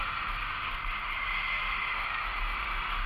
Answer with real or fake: real